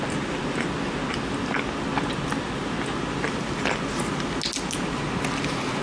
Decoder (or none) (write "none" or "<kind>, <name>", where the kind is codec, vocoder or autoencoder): none